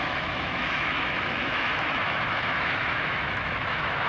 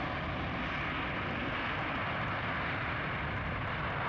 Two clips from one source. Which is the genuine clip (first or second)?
second